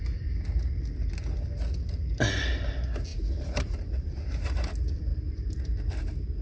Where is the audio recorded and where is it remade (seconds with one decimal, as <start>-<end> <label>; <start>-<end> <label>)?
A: 0.0-3.1 recorded; 3.1-4.2 remade; 4.2-5.1 recorded; 5.1-6.4 remade